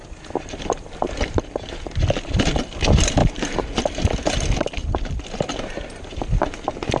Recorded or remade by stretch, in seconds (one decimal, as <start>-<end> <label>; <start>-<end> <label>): 0.0-3.2 recorded; 3.2-4.1 remade; 4.1-7.0 recorded